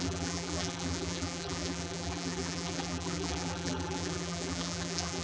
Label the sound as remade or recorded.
remade